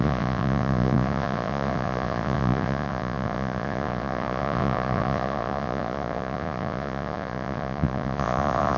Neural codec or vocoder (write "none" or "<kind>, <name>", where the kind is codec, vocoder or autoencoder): vocoder, Vocos